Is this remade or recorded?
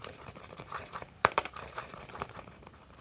remade